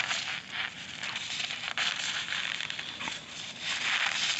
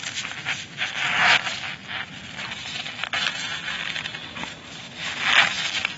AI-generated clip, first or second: first